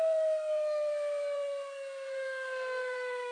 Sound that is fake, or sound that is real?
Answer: fake